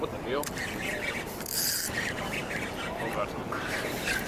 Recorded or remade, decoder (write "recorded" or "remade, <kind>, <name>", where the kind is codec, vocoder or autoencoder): remade, vocoder, BigVGAN v2